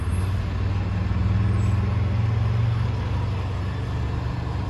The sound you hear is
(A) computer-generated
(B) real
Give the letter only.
B